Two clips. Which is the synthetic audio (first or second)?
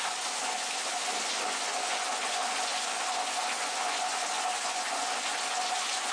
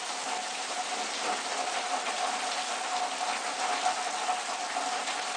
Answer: first